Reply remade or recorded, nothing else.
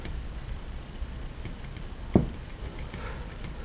recorded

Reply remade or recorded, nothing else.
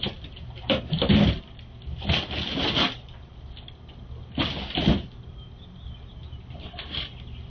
recorded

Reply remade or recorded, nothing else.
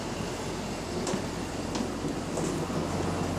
recorded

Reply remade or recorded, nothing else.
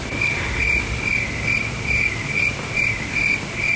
recorded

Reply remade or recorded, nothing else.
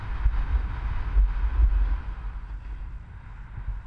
recorded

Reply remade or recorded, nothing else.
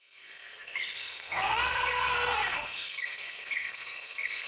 remade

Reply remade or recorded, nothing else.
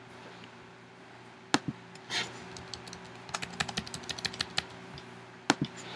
recorded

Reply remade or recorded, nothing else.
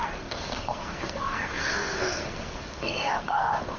remade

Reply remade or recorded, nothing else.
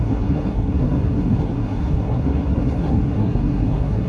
remade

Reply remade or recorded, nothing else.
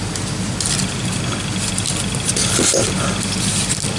recorded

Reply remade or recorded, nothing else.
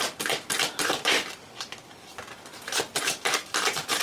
recorded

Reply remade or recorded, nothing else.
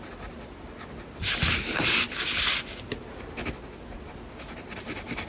recorded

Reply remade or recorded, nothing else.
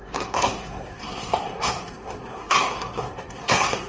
remade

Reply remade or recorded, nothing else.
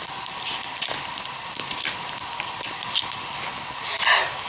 recorded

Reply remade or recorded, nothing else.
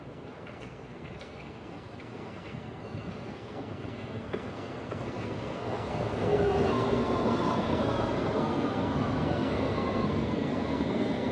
remade